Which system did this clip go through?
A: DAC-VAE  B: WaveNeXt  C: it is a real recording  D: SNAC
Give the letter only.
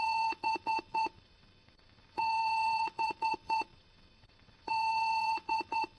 B